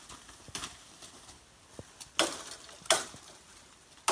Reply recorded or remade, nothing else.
recorded